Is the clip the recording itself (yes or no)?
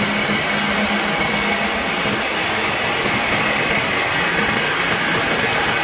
yes